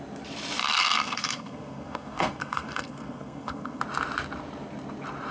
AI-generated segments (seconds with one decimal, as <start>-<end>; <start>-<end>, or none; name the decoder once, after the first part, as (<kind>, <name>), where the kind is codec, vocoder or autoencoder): 0.6-3.8 (codec, SNAC)